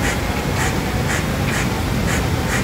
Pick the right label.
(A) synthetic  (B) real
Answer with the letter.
B